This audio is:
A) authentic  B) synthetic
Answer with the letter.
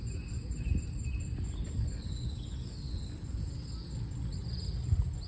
A